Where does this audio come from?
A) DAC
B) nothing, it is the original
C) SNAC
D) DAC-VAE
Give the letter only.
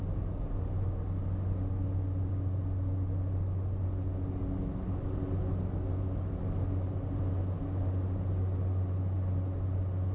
B